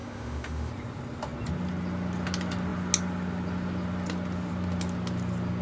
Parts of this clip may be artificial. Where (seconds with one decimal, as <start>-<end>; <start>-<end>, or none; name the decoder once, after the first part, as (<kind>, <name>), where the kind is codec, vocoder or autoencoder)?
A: 0.0-0.7 (autoencoder, DAC-VAE)